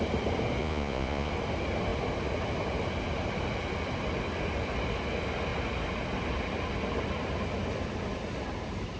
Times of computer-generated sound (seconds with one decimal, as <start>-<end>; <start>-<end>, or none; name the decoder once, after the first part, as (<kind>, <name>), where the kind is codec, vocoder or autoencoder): 0.6-1.3 (vocoder, Vocos)